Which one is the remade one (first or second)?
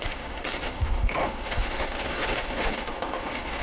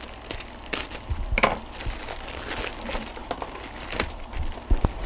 first